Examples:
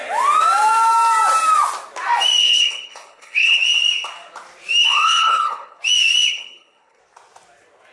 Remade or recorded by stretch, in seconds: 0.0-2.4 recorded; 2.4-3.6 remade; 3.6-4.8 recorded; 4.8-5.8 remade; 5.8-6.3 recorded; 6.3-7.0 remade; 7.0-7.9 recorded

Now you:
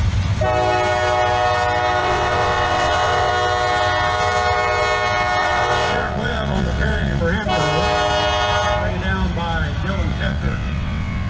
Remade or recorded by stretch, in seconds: 0.0-2.0 recorded; 2.0-3.3 remade; 3.3-5.4 recorded; 5.4-7.2 remade; 7.2-10.1 recorded; 10.1-11.3 remade

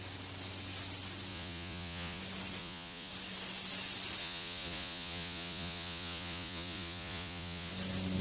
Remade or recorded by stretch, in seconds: 0.0-1.3 recorded; 1.3-2.2 remade; 2.2-2.6 recorded; 2.6-3.1 remade; 3.1-4.2 recorded; 4.2-7.7 remade; 7.7-8.2 recorded